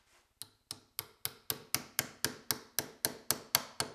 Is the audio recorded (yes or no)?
yes